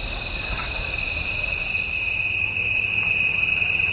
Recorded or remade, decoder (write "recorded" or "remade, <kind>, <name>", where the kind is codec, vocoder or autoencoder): recorded